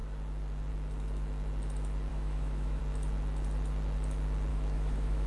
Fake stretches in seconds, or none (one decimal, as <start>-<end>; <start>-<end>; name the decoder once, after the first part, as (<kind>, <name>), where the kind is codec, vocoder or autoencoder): 2.1-2.8 (autoencoder, DAC-VAE); 4.5-5.3